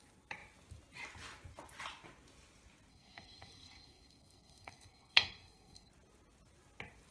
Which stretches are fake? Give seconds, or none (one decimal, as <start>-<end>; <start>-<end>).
2.9-5.9